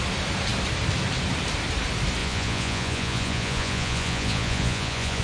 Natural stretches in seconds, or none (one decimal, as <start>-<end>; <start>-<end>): 0.0-2.2